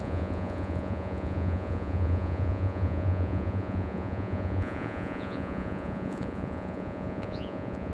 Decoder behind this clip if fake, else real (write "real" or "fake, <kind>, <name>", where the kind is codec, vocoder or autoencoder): fake, vocoder, Vocos